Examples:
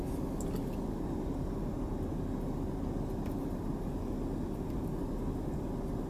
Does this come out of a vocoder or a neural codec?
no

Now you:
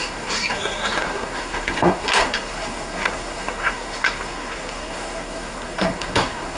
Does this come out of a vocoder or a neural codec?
yes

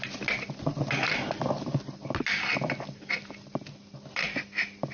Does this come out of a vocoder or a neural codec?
no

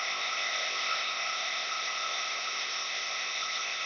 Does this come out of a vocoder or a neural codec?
yes